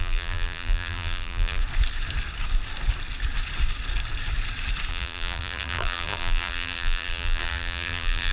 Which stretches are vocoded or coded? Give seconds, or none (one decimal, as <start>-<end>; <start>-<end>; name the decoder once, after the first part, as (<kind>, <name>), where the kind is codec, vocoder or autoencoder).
0.0-1.6 (vocoder, BigVGAN v2); 4.9-8.3